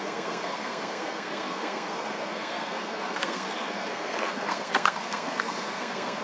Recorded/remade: remade